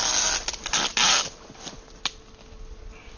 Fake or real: real